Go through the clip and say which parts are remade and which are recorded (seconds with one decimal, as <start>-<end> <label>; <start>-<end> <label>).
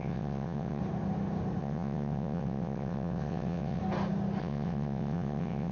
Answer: 0.0-0.8 remade; 0.8-1.6 recorded; 1.6-3.8 remade; 3.8-4.4 recorded; 4.4-5.7 remade